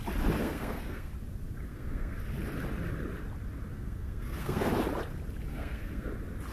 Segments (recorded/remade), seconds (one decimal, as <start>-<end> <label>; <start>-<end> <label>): 0.0-0.4 recorded; 0.4-1.1 remade; 1.1-1.7 recorded; 1.7-2.2 remade; 2.2-3.7 recorded; 3.7-4.7 remade; 4.7-5.5 recorded; 5.5-6.1 remade; 6.1-6.5 recorded